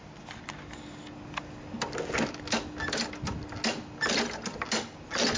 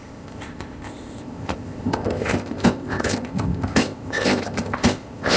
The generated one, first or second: second